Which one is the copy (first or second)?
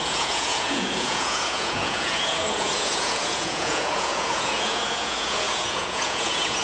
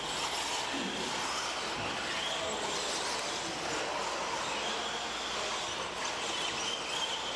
first